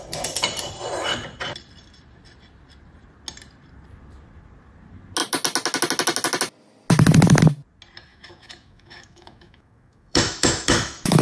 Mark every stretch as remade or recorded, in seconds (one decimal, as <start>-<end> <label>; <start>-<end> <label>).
0.0-8.1 recorded; 8.1-11.2 remade